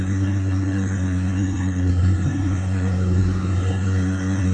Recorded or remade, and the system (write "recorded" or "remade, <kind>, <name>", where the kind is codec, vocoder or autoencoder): remade, codec, SNAC